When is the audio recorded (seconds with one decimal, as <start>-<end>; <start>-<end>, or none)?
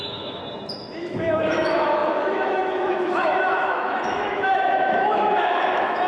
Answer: 0.4-1.0